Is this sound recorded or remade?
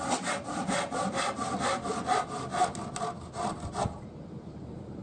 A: recorded